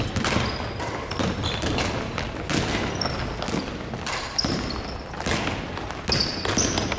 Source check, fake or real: real